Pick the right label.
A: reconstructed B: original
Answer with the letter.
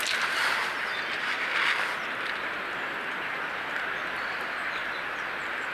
B